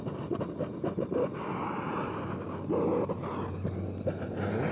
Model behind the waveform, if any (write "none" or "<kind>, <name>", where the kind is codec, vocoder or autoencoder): none